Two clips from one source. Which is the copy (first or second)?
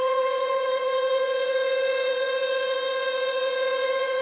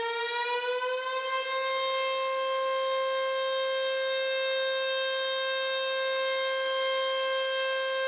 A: first